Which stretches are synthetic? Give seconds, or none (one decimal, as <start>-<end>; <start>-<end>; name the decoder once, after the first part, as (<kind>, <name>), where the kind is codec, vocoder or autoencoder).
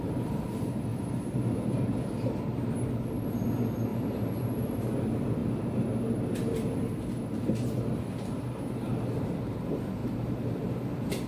3.9-4.7 (vocoder, BigVGAN v2); 10.0-10.8